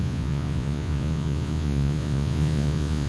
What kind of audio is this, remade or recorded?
remade